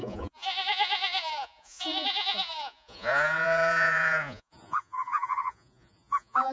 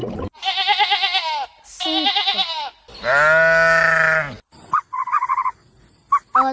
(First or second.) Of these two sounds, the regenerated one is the first